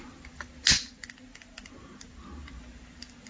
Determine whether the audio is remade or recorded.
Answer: recorded